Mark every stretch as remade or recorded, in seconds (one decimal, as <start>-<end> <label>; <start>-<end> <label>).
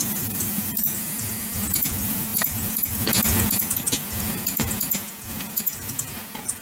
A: 0.0-6.6 remade